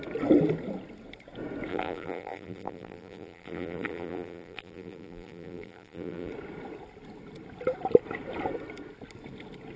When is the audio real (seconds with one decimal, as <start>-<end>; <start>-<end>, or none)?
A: 0.0-1.7; 6.3-9.8

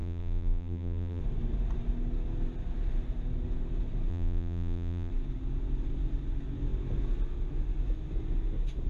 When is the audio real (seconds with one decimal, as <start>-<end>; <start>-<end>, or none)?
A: 1.2-4.1; 5.1-8.9